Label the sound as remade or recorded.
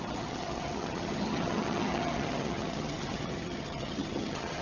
remade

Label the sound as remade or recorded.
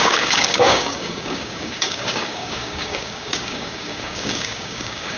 remade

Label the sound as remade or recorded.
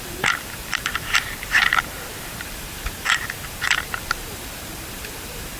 remade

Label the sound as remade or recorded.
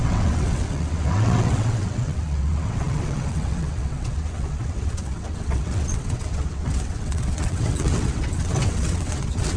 remade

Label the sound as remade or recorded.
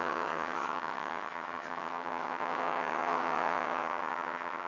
remade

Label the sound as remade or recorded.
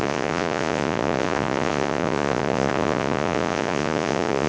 remade